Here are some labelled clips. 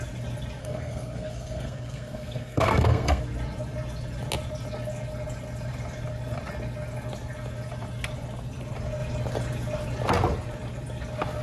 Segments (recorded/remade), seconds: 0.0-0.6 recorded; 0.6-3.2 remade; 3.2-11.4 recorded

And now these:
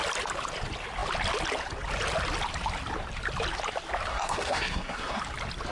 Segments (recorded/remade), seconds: 0.0-4.1 recorded; 4.1-5.2 remade; 5.2-5.7 recorded

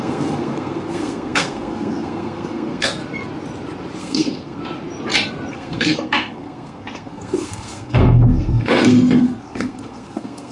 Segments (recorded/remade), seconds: 0.0-3.0 remade; 3.0-4.0 recorded; 4.0-4.6 remade; 4.6-5.5 recorded; 5.5-10.5 remade

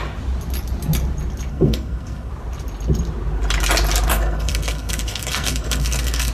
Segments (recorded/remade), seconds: 0.0-1.5 recorded; 1.5-2.3 remade; 2.3-4.1 recorded; 4.1-6.3 remade

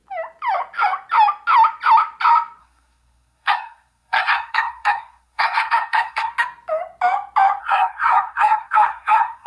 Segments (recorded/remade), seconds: 0.0-2.6 recorded; 2.6-6.3 remade; 6.3-7.6 recorded; 7.6-9.5 remade

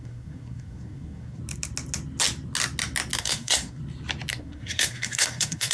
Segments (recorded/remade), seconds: 0.0-1.4 remade; 1.4-3.2 recorded; 3.2-3.8 remade; 3.8-4.3 recorded; 4.3-5.7 remade

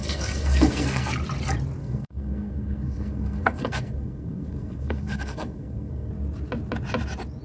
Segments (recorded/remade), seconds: 0.0-1.1 remade; 1.1-1.8 recorded; 1.8-6.1 remade; 6.1-7.4 recorded